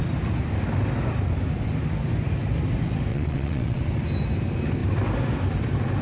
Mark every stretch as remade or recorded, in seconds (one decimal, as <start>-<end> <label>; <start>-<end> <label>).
0.0-3.1 recorded; 3.1-3.8 remade; 3.8-6.0 recorded